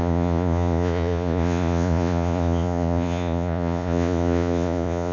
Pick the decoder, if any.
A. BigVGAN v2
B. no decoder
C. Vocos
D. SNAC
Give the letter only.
C